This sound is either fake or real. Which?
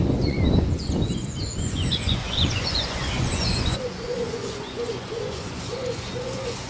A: fake